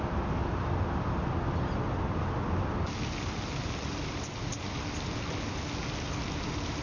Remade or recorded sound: recorded